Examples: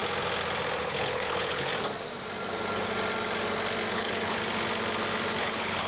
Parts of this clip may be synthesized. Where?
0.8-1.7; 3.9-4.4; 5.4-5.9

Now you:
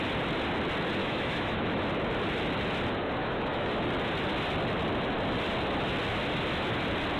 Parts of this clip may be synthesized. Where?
1.0-1.8; 3.2-3.7

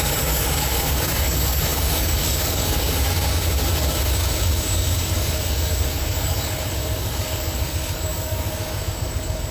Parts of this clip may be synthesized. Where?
0.0-9.5

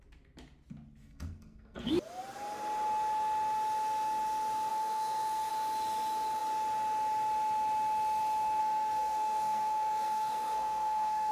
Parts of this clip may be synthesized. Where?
1.0-1.9; 4.7-5.5; 8.6-11.3

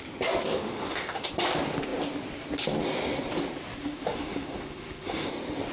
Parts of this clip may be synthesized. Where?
0.5-1.3; 3.8-5.3

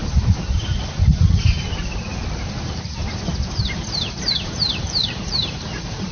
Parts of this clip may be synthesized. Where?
2.4-3.0; 4.3-6.1

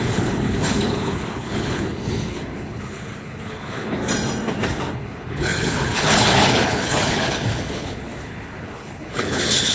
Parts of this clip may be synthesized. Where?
0.0-4.0; 4.9-9.7